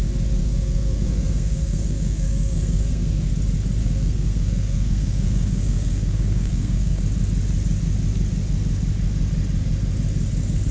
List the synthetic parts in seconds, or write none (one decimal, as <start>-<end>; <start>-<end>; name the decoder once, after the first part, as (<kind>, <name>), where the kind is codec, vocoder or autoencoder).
0.4-3.3 (codec, SNAC); 3.8-7.0